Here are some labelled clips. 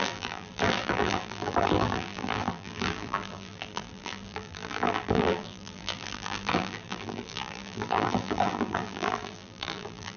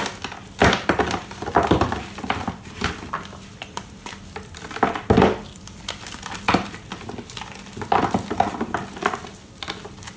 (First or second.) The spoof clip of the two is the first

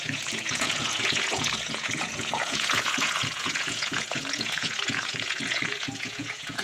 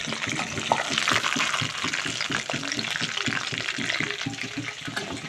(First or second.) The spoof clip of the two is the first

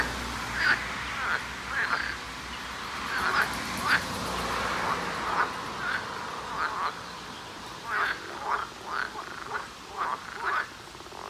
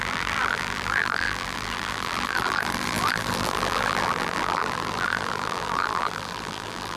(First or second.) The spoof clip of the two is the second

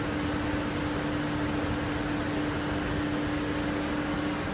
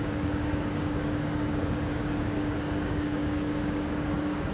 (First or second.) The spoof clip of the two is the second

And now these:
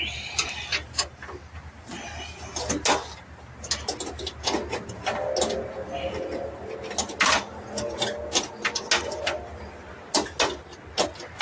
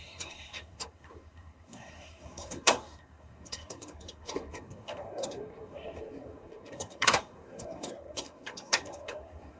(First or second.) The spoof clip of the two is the second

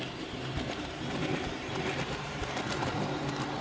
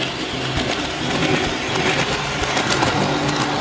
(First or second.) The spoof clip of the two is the first